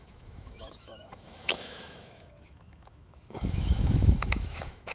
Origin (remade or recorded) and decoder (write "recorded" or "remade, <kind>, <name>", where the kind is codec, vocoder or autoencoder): remade, autoencoder, DAC-VAE